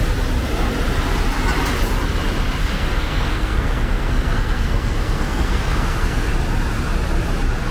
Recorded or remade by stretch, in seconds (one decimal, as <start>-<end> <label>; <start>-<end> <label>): 0.0-2.6 recorded; 2.6-6.3 remade; 6.3-7.7 recorded